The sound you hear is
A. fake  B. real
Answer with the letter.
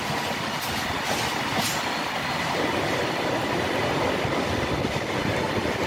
B